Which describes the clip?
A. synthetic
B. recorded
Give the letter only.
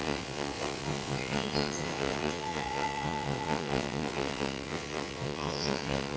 A